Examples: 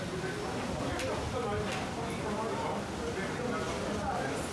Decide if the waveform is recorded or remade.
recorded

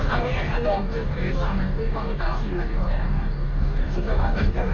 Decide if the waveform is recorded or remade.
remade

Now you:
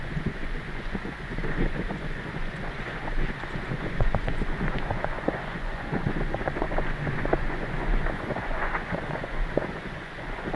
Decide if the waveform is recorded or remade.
remade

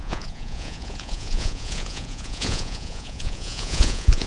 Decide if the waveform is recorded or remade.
remade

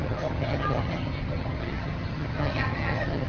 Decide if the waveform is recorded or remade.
remade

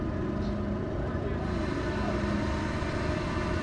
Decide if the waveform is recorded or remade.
recorded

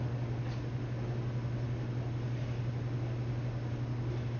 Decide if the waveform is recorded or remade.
recorded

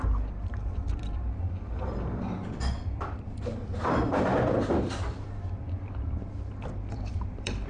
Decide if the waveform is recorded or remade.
remade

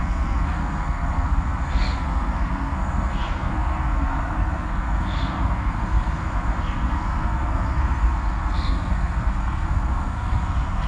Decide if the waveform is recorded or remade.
remade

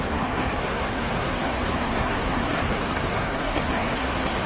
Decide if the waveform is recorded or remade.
remade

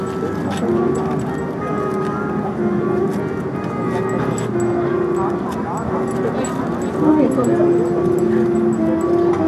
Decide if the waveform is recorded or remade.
recorded